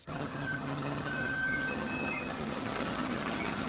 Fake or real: fake